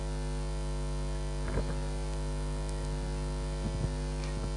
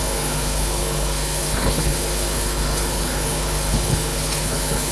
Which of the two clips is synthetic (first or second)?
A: second